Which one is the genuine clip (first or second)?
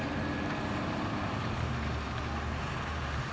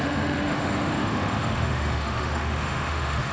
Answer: first